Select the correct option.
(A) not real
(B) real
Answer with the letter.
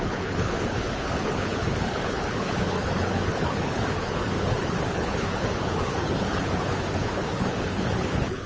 A